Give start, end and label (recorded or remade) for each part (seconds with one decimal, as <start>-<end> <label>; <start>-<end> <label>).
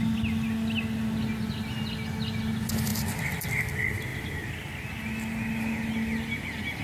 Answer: 0.0-6.8 recorded